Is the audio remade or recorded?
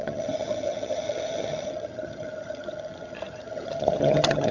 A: remade